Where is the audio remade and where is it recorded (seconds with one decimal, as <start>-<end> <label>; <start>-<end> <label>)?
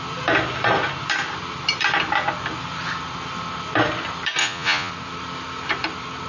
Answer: 0.0-4.4 recorded; 4.4-4.9 remade; 4.9-6.3 recorded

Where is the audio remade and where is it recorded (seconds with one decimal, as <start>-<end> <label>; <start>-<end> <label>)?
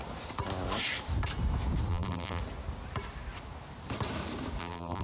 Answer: 0.0-1.9 recorded; 1.9-2.4 remade; 2.4-4.6 recorded; 4.6-5.0 remade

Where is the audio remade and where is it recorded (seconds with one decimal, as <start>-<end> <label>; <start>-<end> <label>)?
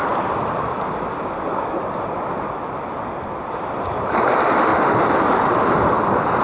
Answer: 0.0-6.4 recorded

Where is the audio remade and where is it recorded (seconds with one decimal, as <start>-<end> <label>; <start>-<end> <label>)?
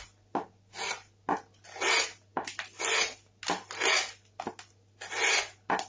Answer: 0.0-5.9 recorded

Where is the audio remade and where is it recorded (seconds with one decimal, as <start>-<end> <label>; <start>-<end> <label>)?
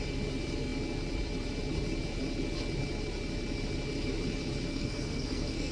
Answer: 0.0-4.7 recorded; 4.7-5.7 remade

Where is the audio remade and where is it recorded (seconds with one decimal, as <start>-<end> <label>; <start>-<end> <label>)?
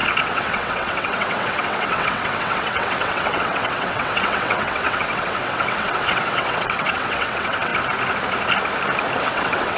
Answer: 0.0-7.7 remade; 7.7-9.2 recorded; 9.2-9.8 remade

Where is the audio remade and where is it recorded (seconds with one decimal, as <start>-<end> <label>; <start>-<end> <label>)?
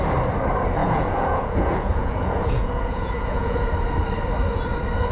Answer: 0.0-0.8 recorded; 0.8-3.7 remade; 3.7-5.1 recorded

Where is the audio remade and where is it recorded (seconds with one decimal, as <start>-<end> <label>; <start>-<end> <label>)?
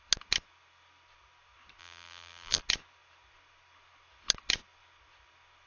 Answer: 0.0-1.8 recorded; 1.8-2.6 remade; 2.6-5.7 recorded